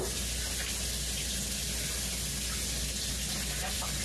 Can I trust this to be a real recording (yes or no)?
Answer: yes